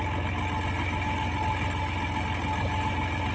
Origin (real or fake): real